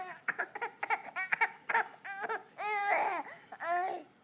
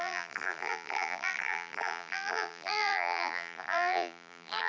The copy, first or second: second